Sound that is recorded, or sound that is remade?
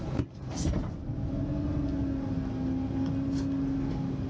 recorded